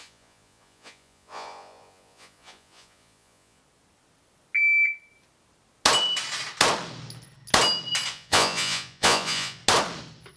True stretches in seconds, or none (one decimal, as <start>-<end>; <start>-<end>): 3.6-8.1; 9.6-10.4